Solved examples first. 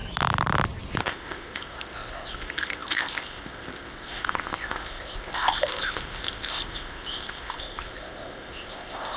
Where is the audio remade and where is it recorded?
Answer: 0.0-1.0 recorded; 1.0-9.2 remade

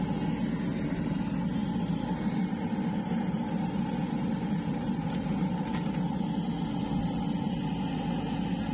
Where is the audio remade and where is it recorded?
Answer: 0.0-1.6 recorded; 1.6-6.2 remade; 6.2-8.7 recorded

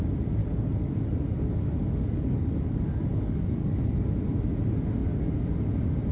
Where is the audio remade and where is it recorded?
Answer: 0.0-0.4 recorded; 0.4-4.1 remade; 4.1-6.1 recorded